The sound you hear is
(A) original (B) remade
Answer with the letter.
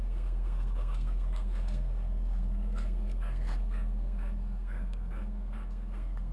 B